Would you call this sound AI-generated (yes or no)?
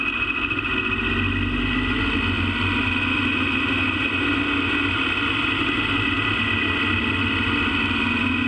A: no